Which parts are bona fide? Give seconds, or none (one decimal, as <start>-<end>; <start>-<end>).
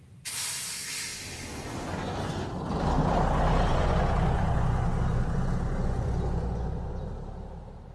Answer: 0.0-3.7; 7.1-7.9